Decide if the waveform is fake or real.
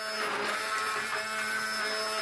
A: real